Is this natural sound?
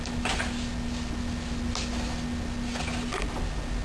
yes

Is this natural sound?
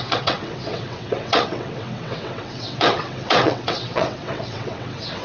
no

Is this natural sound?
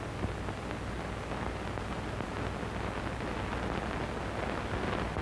yes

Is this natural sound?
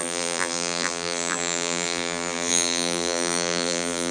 no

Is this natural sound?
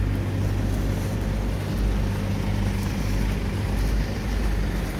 yes